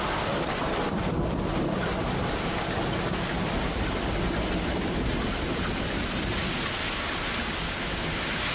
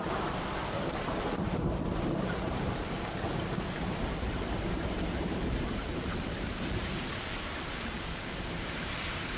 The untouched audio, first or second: first